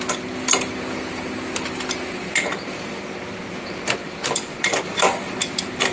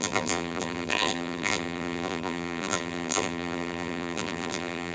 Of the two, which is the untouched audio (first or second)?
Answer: first